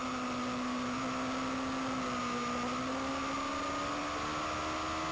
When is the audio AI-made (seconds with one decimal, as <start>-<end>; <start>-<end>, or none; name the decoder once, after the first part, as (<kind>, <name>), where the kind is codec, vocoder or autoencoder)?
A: none